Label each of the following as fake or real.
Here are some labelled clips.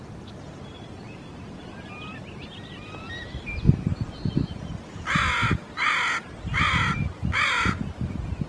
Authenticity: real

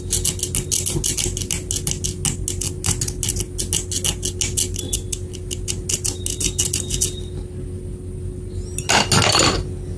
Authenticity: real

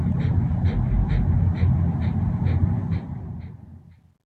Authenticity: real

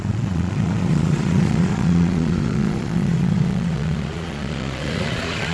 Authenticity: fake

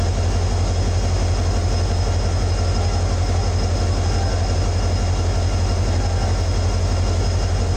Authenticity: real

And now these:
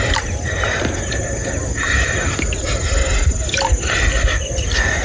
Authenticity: real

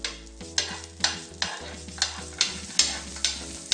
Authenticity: real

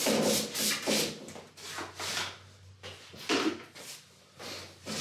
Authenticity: real